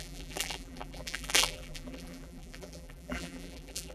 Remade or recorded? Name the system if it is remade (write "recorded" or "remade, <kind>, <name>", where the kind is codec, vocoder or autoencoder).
remade, vocoder, BigVGAN v2